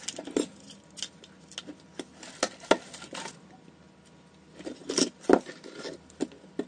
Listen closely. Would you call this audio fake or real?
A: real